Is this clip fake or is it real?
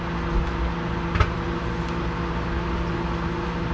real